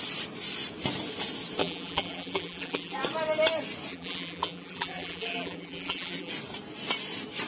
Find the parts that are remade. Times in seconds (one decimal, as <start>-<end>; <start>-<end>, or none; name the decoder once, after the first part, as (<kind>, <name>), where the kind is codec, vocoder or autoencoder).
1.6-3.0 (vocoder, BigVGAN v2); 3.9-6.3